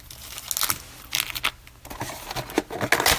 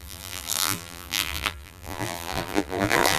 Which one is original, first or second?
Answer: first